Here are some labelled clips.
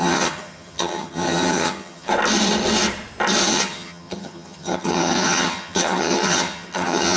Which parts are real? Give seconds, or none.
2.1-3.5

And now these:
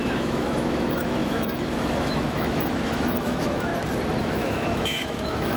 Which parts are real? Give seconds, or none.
3.7-4.2

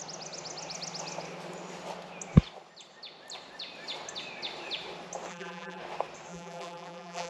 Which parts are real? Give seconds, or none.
0.0-5.3; 5.8-6.3

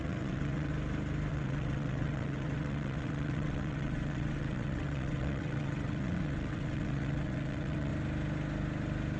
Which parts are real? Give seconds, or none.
0.7-1.3; 7.9-9.2

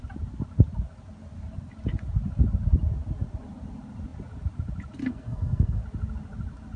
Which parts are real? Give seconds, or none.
0.0-5.0; 5.8-6.8

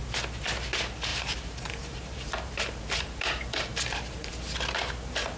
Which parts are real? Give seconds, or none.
0.0-1.1; 4.3-5.4

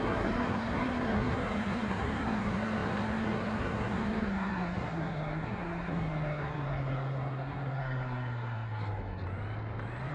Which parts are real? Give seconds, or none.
9.2-10.1